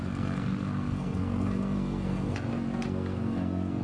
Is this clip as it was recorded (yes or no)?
no